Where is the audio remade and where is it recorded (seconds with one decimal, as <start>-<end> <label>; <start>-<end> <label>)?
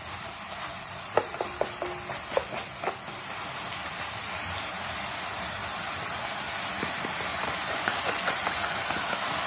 0.0-7.3 recorded; 7.3-9.1 remade; 9.1-9.5 recorded